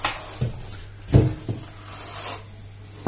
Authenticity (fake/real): real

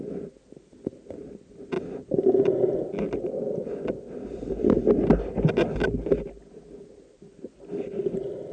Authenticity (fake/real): real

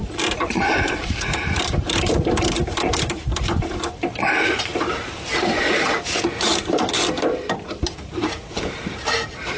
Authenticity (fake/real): fake